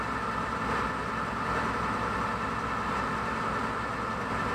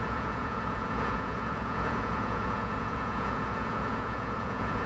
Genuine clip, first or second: first